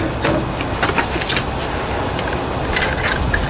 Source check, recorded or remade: recorded